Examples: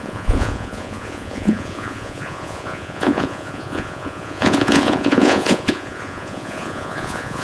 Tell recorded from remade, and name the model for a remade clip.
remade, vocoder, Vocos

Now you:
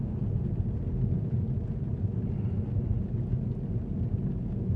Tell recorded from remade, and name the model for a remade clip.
recorded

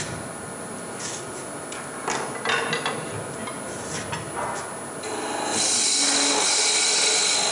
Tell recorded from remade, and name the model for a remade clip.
recorded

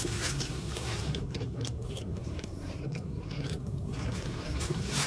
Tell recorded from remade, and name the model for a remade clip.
remade, codec, SNAC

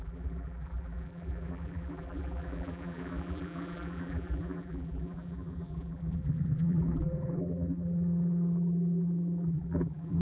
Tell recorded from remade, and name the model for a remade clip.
remade, vocoder, BigVGAN v2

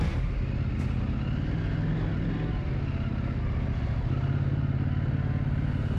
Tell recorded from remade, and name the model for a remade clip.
recorded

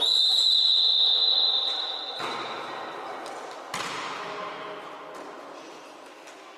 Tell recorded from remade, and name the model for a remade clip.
recorded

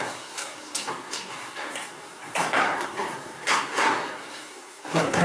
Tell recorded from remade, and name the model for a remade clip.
remade, codec, SNAC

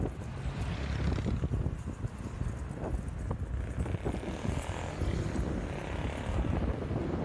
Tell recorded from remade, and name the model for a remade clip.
recorded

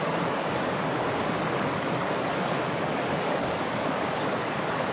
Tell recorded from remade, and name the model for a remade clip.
remade, codec, DAC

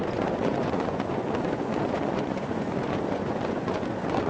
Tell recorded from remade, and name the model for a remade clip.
remade, vocoder, Vocos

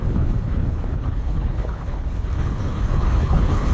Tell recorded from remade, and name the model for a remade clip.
remade, codec, HILCodec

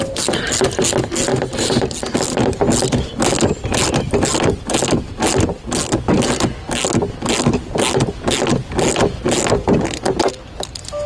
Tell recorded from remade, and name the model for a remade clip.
recorded